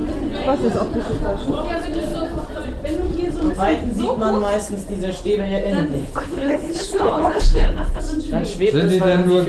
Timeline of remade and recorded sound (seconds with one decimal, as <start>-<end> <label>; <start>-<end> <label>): 0.0-6.0 recorded; 6.0-8.0 remade; 8.0-9.5 recorded

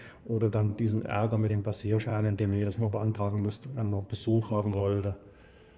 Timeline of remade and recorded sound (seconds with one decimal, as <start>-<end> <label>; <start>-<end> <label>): 0.0-0.7 remade; 0.7-1.5 recorded; 1.5-4.8 remade; 4.8-5.8 recorded

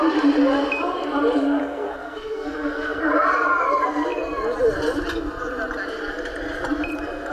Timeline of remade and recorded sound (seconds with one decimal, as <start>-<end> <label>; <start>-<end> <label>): 0.0-1.6 recorded; 1.6-3.0 remade; 3.0-7.3 recorded

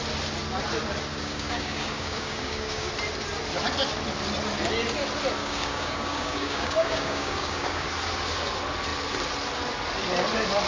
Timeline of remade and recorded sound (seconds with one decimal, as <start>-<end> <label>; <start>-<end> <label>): 0.0-1.1 recorded; 1.1-2.9 remade; 2.9-5.4 recorded; 5.4-7.9 remade; 7.9-10.7 recorded

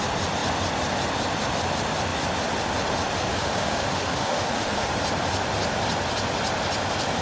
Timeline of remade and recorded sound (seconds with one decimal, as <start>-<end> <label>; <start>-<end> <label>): 0.0-3.3 recorded; 3.3-4.9 remade; 4.9-7.2 recorded